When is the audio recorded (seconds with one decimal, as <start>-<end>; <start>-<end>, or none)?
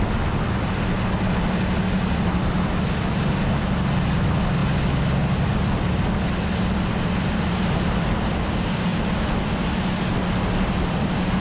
0.0-11.4